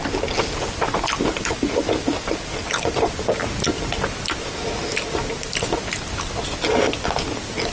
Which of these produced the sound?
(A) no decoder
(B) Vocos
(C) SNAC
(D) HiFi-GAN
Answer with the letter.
A